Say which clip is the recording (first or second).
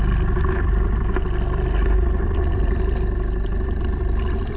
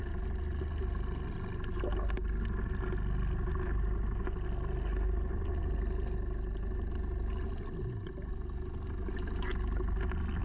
second